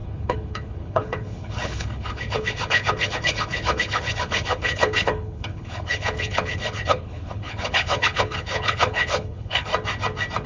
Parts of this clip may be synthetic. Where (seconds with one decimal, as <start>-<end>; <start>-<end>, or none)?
0.0-9.7